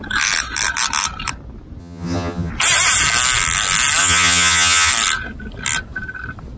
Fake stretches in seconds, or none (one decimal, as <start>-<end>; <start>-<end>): 1.8-2.5; 4.0-4.9